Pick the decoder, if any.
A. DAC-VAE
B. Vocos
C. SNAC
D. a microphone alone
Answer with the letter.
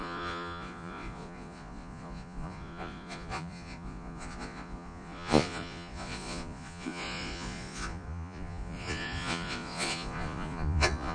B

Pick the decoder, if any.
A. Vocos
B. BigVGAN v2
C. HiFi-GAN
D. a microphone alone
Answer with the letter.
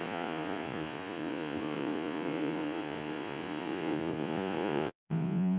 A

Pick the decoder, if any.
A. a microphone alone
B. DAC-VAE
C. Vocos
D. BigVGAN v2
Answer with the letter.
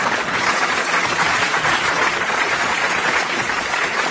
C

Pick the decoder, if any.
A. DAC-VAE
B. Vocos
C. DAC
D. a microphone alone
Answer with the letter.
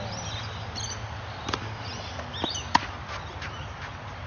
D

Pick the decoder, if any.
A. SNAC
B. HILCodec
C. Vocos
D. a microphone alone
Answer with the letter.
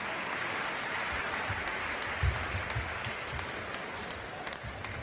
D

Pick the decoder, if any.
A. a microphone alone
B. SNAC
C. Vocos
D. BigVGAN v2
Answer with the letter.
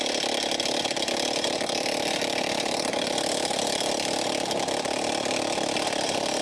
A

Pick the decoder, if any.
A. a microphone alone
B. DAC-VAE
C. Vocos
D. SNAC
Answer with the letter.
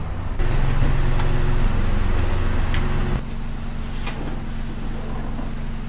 A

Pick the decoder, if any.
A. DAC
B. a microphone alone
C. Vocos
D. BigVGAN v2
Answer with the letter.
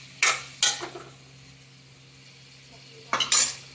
B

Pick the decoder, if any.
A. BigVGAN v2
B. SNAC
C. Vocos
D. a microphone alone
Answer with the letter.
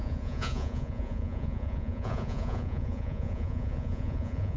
C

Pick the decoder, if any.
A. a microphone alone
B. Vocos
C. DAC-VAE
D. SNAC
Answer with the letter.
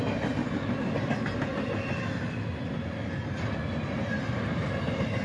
A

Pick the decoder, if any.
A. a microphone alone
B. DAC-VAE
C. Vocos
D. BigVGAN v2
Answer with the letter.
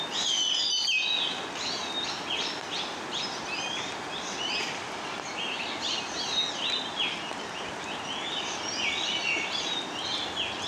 A